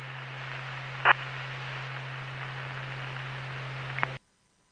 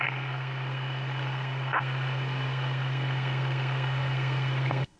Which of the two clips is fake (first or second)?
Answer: second